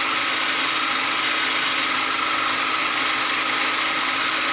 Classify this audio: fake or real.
real